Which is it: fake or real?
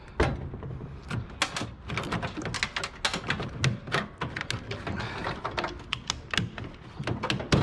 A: real